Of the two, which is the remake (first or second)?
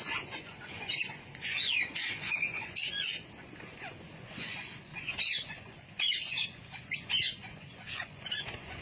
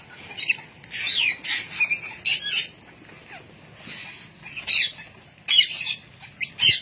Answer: first